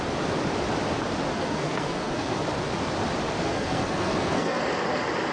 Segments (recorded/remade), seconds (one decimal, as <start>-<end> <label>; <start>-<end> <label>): 0.0-1.3 recorded; 1.3-2.4 remade; 2.4-3.4 recorded; 3.4-4.6 remade; 4.6-5.3 recorded